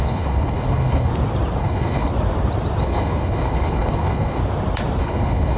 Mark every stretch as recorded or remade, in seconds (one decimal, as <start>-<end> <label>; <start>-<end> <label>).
0.0-1.1 remade; 1.1-1.6 recorded; 1.6-2.1 remade; 2.1-2.8 recorded; 2.8-4.4 remade; 4.4-5.0 recorded; 5.0-5.6 remade